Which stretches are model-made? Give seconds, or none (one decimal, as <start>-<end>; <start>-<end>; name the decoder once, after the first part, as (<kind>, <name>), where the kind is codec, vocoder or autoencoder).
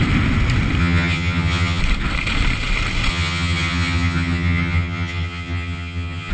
0.8-1.8 (vocoder, HiFi-GAN); 3.1-6.3